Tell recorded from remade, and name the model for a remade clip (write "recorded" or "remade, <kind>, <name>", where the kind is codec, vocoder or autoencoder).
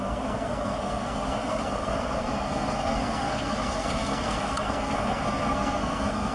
remade, codec, SNAC